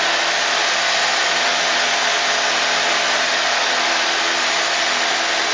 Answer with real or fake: real